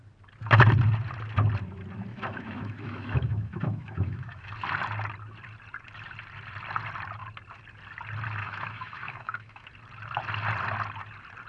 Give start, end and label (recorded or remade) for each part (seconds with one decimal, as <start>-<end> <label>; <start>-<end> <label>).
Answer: 0.0-2.1 recorded; 2.1-4.5 remade; 4.5-8.4 recorded; 8.4-9.7 remade; 9.7-11.5 recorded